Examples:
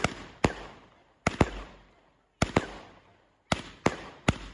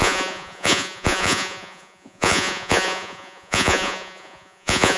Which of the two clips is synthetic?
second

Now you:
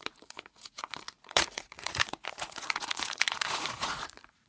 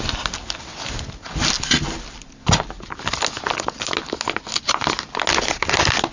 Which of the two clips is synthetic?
first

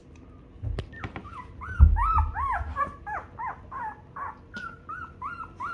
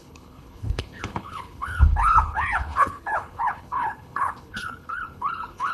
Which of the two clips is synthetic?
second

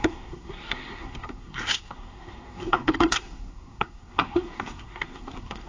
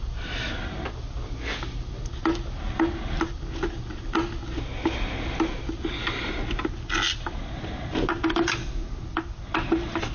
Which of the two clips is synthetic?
first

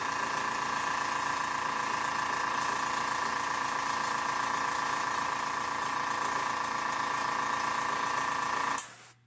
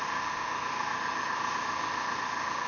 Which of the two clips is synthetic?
second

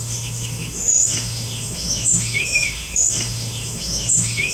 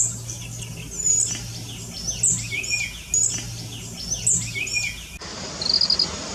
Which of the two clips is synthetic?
first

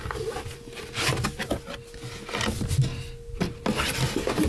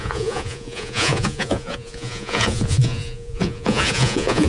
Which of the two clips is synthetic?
second